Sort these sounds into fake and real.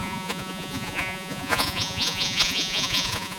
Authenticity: fake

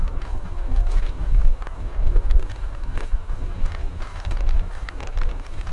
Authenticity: fake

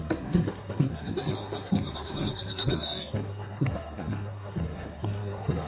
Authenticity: fake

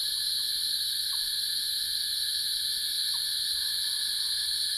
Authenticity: real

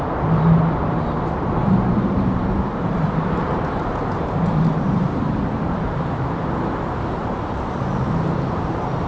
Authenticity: fake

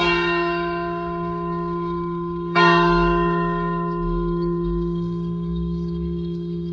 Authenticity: fake